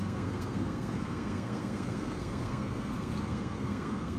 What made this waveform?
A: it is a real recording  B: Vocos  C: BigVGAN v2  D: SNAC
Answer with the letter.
D